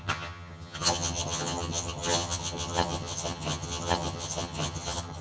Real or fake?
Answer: fake